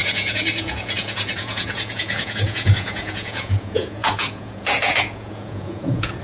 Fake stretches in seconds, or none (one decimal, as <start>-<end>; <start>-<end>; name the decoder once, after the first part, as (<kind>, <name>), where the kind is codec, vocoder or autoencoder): 0.0-6.2 (vocoder, Vocos)